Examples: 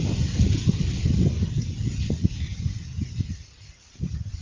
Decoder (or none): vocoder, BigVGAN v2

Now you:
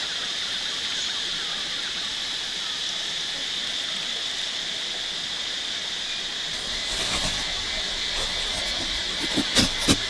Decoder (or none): none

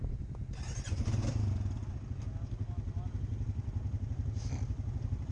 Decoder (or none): none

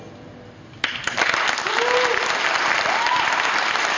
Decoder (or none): none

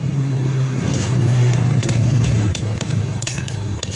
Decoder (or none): codec, SNAC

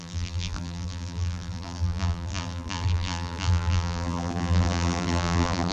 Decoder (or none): vocoder, BigVGAN v2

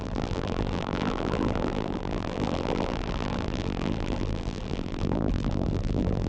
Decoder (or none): vocoder, BigVGAN v2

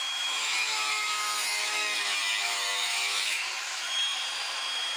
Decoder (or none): autoencoder, DAC-VAE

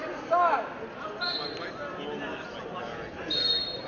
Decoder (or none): none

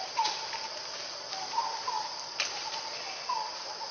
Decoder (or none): none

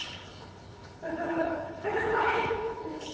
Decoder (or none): codec, HILCodec